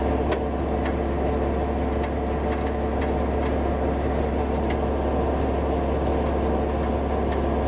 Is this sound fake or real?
real